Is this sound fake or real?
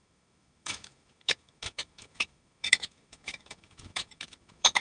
fake